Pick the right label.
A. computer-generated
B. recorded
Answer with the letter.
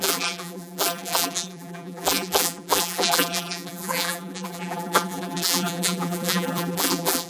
A